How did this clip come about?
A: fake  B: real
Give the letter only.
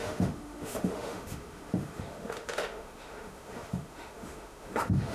A